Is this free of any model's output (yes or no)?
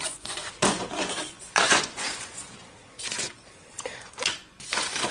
no